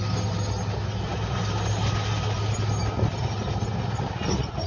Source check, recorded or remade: recorded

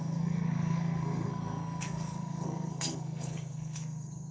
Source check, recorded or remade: remade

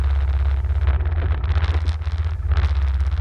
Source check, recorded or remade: recorded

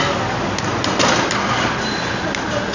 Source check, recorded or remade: recorded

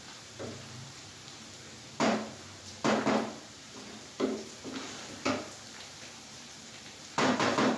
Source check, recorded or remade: remade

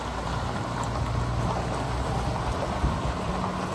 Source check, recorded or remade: recorded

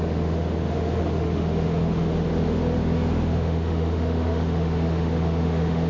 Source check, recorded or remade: remade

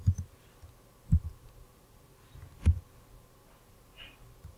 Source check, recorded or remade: recorded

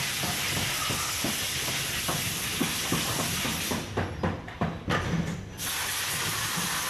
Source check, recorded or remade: recorded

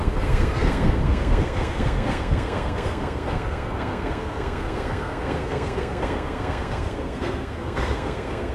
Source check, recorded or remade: remade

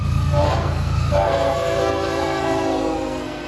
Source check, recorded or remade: remade